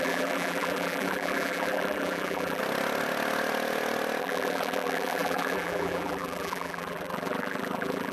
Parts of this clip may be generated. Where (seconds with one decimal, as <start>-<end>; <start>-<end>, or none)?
0.0-2.6; 4.2-8.1